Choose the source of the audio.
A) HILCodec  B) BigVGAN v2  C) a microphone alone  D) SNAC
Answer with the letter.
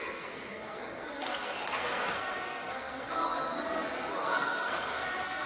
D